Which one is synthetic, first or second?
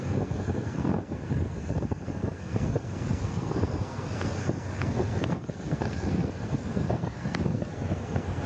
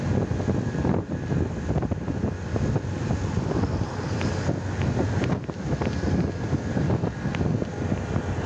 first